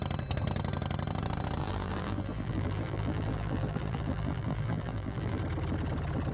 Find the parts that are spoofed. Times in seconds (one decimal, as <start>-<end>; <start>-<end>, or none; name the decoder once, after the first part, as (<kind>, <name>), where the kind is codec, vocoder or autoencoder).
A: 1.6-5.4 (vocoder, BigVGAN v2)